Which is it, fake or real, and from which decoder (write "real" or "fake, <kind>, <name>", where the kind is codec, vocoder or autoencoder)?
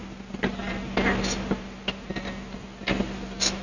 real